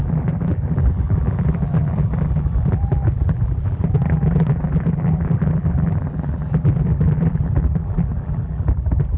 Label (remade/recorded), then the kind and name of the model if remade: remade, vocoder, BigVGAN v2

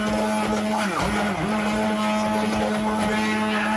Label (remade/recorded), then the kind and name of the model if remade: recorded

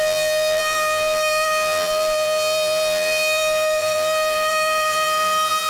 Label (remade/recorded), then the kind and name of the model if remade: remade, vocoder, BigVGAN v2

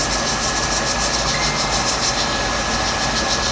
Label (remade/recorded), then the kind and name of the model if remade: recorded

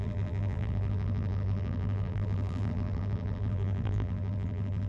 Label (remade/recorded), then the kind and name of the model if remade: remade, vocoder, BigVGAN v2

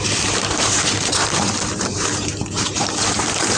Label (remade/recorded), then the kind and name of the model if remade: remade, vocoder, BigVGAN v2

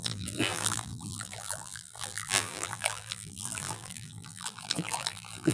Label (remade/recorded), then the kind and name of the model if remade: remade, vocoder, BigVGAN v2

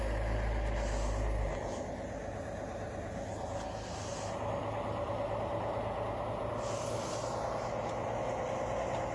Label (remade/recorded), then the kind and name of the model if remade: recorded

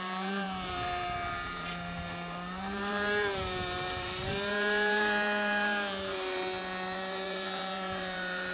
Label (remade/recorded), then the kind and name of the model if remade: remade, vocoder, BigVGAN v2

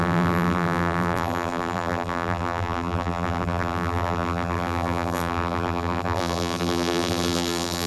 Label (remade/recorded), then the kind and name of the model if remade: remade, vocoder, BigVGAN v2